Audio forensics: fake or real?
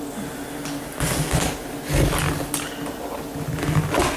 real